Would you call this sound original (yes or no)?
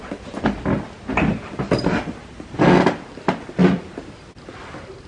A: yes